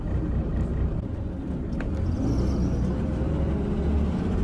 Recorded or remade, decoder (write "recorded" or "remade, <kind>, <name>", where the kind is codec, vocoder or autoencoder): recorded